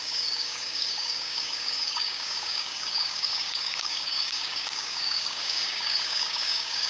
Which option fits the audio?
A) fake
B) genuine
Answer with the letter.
A